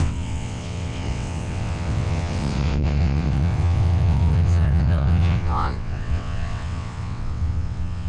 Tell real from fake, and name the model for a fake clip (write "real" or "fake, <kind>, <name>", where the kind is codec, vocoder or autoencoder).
fake, vocoder, WaveNeXt